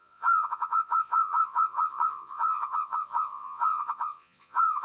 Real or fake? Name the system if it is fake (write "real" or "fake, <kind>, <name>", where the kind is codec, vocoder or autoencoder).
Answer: fake, vocoder, Vocos